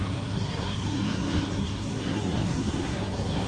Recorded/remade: remade